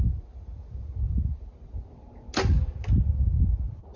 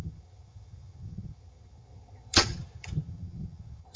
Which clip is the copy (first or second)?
second